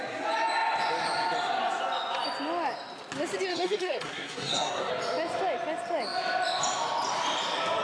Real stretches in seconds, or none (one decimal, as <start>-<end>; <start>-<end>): 0.0-3.5; 4.9-7.8